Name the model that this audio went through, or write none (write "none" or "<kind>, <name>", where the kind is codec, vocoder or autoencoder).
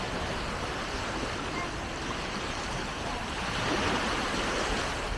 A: vocoder, BigVGAN v2